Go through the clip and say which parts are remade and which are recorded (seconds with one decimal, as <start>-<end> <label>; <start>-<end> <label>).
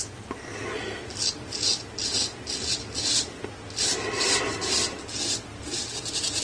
0.0-6.4 recorded